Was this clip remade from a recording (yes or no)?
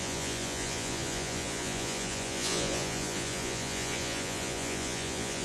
yes